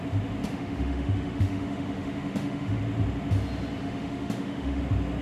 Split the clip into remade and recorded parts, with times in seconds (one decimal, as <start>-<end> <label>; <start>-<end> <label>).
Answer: 0.0-0.5 recorded; 0.5-2.8 remade; 2.8-3.8 recorded; 3.8-4.8 remade; 4.8-5.2 recorded